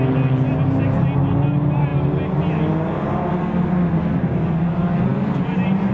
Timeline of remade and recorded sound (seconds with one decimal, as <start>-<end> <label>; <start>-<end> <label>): 0.0-5.9 recorded